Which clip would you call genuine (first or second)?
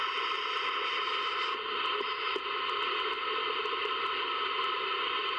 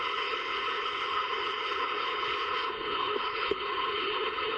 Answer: first